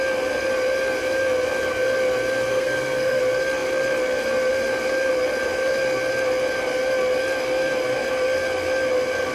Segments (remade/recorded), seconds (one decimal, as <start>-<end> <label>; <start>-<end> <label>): 0.0-2.5 recorded; 2.5-3.2 remade; 3.2-9.3 recorded